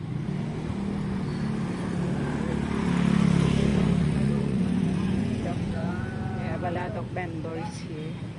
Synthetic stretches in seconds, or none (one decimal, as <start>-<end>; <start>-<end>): 3.7-7.1